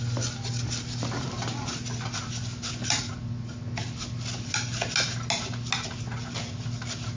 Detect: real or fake real